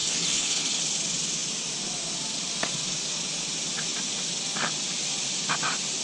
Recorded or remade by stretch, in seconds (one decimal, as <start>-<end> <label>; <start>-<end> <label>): 0.0-0.8 remade; 0.8-6.0 recorded